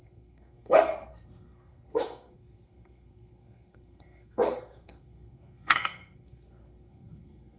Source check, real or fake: fake